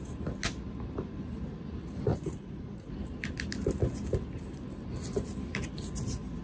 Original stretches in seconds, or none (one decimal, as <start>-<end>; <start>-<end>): 0.0-2.1; 2.9-6.4